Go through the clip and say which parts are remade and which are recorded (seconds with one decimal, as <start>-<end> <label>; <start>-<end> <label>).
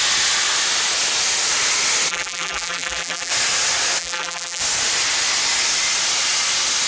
0.0-2.1 recorded; 2.1-3.3 remade; 3.3-4.0 recorded; 4.0-4.6 remade; 4.6-6.9 recorded